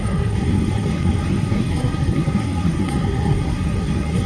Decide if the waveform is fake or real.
fake